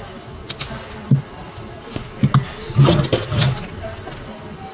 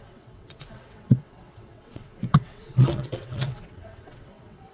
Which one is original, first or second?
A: first